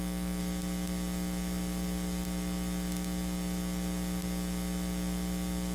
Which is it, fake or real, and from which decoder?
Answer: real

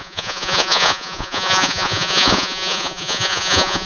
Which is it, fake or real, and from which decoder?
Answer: fake, vocoder, Vocos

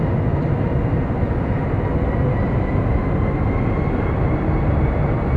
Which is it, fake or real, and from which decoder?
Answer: real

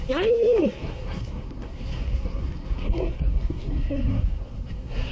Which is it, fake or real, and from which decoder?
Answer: fake, codec, SNAC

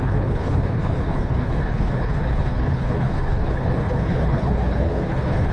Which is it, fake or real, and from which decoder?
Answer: fake, codec, HILCodec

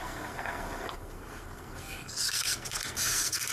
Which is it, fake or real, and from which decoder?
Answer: fake, codec, SNAC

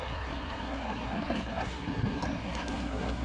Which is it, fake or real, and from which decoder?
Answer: fake, codec, SNAC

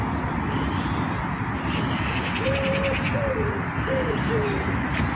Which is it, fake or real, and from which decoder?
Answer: real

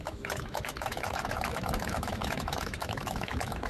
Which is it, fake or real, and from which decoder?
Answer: fake, autoencoder, DAC-VAE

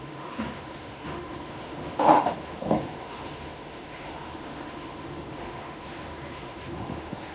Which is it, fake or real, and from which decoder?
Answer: fake, autoencoder, DAC-VAE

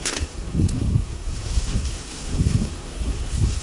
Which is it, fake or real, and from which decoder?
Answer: fake, codec, SNAC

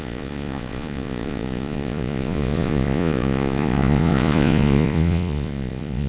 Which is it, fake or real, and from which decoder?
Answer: fake, vocoder, Vocos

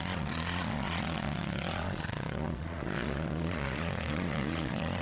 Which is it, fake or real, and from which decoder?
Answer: fake, vocoder, Vocos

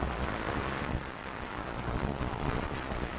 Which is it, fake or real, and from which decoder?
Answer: fake, vocoder, Vocos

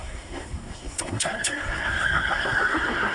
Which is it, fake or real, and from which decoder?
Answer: fake, codec, SNAC